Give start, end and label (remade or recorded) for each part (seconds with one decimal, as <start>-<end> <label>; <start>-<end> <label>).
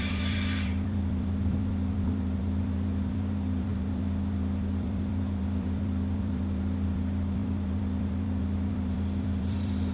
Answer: 0.0-9.9 remade